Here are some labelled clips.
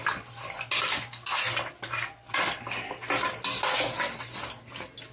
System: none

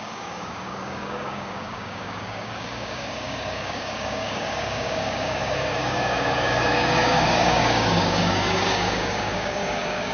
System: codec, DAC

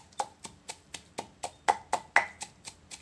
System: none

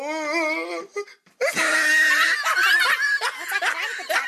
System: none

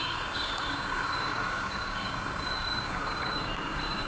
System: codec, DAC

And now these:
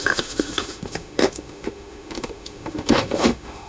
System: autoencoder, DAC-VAE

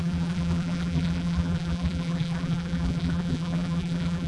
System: vocoder, BigVGAN v2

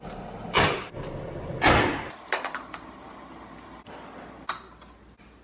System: none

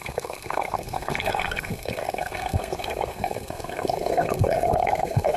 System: codec, SNAC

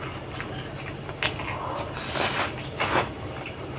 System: none